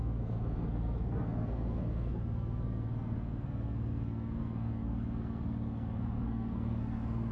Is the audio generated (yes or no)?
yes